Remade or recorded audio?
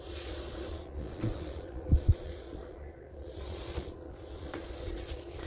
remade